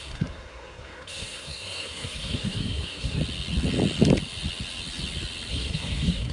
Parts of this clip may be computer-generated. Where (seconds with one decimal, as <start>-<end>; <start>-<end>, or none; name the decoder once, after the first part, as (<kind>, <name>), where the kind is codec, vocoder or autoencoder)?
0.0-3.2 (codec, SNAC); 5.5-6.3